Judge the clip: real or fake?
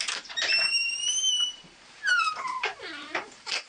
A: fake